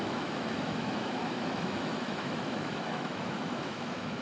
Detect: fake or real fake